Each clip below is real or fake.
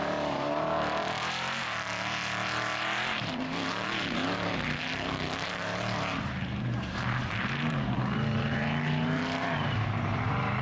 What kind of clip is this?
fake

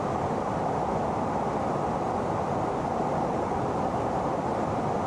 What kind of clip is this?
fake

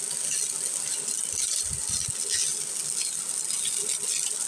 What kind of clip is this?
real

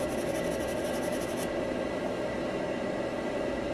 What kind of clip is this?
real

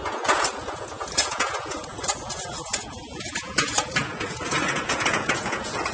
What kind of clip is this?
fake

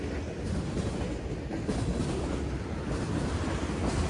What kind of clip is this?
real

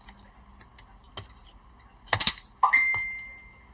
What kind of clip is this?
real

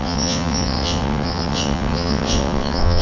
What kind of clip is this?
fake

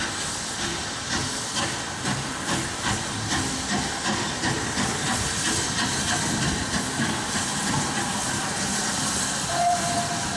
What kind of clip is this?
real